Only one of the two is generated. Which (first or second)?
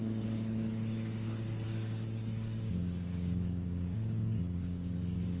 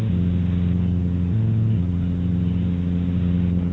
first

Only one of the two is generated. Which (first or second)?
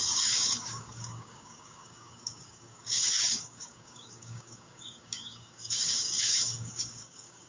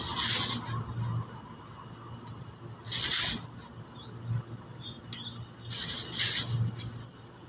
first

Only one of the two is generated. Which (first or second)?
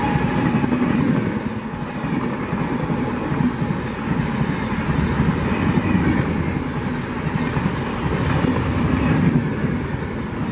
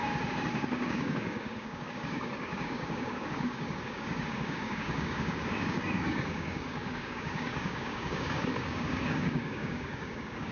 second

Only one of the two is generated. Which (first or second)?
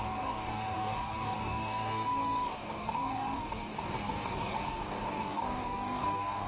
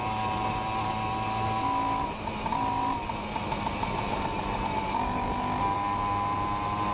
first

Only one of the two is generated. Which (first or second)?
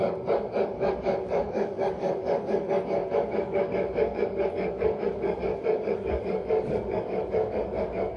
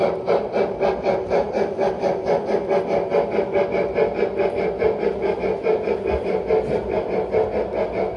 first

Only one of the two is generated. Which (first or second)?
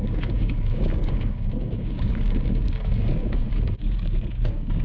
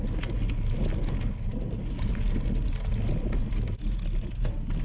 first